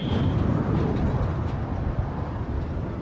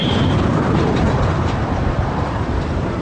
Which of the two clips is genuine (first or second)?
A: first